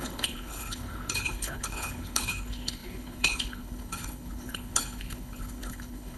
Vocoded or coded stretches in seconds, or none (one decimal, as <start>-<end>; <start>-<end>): 0.0-6.2